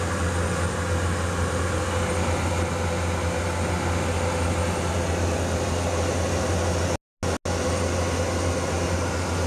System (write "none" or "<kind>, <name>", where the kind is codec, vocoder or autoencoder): none